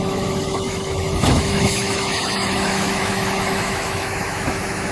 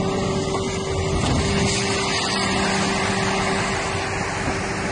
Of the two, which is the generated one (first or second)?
first